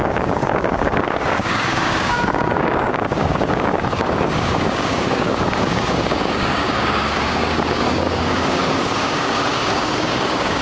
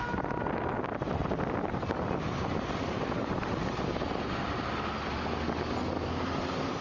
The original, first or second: second